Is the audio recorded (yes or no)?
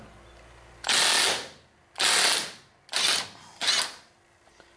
yes